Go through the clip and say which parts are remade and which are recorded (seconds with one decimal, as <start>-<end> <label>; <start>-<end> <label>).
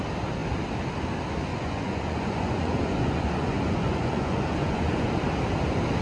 0.0-1.5 recorded; 1.5-5.1 remade; 5.1-6.0 recorded